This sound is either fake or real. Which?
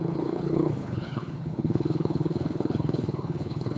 fake